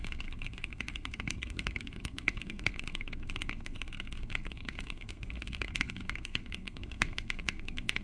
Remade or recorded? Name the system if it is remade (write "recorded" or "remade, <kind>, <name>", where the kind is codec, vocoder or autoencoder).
remade, codec, SNAC